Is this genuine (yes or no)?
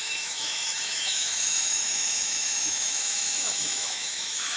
no